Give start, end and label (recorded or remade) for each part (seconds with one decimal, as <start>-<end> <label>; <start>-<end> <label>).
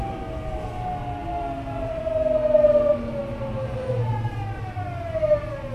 0.0-5.7 recorded